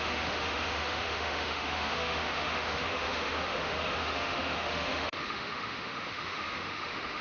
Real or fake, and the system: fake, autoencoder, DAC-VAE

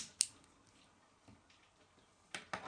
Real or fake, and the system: real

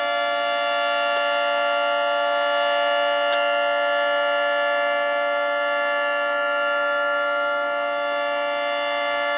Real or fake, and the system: real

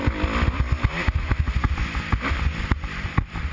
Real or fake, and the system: real